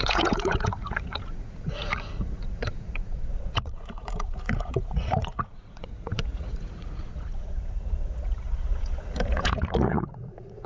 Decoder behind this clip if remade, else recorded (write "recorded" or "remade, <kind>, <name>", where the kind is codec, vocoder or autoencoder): remade, vocoder, Vocos